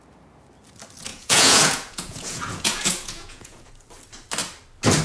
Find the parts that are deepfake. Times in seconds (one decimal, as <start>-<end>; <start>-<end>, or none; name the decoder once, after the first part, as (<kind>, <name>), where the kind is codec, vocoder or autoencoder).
1.1-3.7 (vocoder, Vocos)